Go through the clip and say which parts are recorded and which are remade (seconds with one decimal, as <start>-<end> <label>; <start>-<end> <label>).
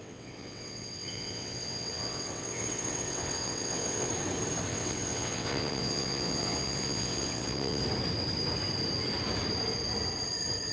0.0-4.1 remade; 4.1-4.7 recorded; 4.7-7.8 remade; 7.8-10.7 recorded